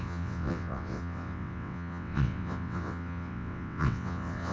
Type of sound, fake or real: fake